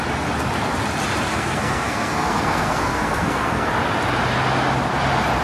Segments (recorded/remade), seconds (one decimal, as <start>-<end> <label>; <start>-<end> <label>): 0.0-1.3 recorded; 1.3-3.7 remade; 3.7-5.4 recorded